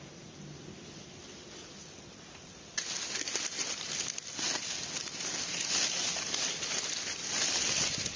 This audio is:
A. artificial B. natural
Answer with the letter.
B